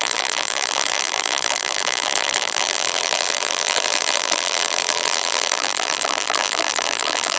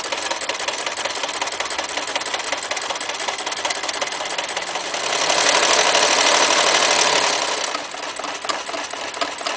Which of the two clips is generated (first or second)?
first